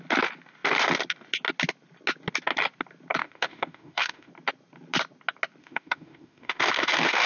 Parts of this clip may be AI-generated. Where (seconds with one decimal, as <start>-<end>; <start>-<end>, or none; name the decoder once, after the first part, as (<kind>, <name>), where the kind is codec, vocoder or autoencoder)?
3.2-4.3 (autoencoder, DAC-VAE); 5.6-7.3